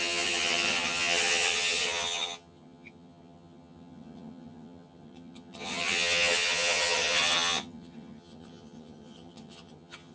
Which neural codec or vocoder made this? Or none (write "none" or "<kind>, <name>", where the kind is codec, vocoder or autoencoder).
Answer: vocoder, HiFi-GAN